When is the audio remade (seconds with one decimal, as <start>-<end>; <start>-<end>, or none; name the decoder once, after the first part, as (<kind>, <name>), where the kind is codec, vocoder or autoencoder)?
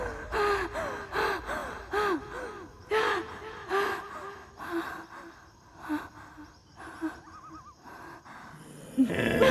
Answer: 6.6-7.1 (vocoder, BigVGAN v2)